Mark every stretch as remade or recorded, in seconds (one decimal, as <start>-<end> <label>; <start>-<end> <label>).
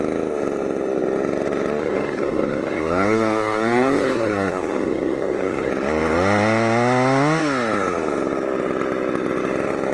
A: 0.0-1.8 recorded; 1.8-5.7 remade; 5.7-9.9 recorded